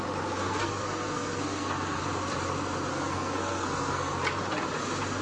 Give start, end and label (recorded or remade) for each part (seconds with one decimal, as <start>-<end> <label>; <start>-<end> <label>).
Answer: 0.0-0.4 recorded; 0.4-2.0 remade; 2.0-2.9 recorded; 2.9-4.1 remade; 4.1-5.2 recorded